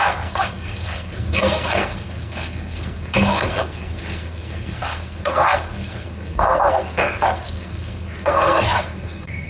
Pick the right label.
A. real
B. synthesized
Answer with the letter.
B